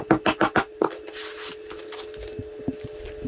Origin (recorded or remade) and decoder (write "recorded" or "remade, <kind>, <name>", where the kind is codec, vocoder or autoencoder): recorded